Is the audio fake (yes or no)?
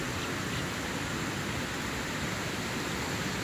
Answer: no